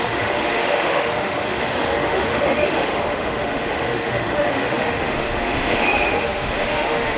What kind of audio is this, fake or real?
fake